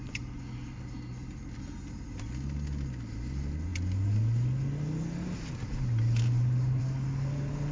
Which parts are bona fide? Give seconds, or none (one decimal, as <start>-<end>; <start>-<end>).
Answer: 0.0-7.7